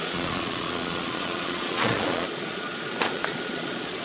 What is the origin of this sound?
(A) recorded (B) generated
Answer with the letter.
B